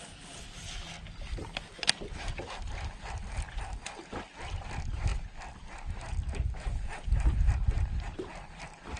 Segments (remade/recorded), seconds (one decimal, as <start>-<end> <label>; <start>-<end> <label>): 0.0-9.0 recorded